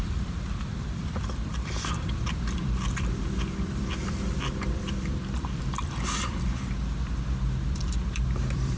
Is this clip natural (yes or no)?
no